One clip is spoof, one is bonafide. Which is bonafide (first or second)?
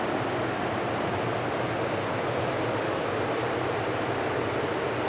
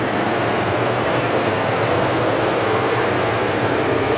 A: first